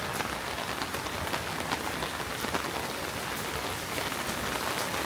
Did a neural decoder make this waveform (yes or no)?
no